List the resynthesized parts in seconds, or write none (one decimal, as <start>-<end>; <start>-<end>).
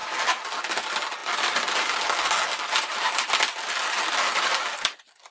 none